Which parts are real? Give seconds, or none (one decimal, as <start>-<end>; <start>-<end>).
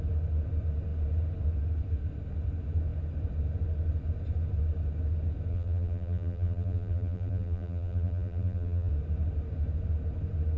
0.0-5.5; 8.9-10.6